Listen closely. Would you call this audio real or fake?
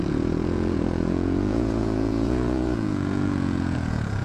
fake